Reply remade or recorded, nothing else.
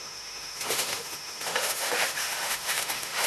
remade